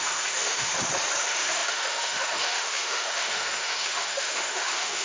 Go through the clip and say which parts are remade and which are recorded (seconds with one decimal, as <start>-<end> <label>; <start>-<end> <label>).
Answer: 0.0-0.7 remade; 0.7-1.2 recorded; 1.2-5.0 remade